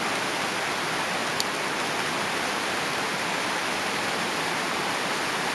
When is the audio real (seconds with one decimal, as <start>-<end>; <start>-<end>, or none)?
0.0-3.6; 4.8-5.5